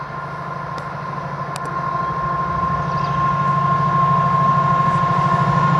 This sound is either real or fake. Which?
real